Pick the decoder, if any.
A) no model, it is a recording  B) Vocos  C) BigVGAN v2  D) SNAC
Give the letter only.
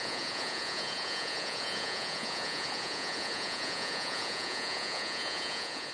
B